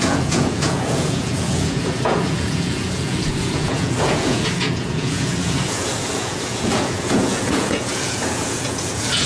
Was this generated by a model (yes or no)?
yes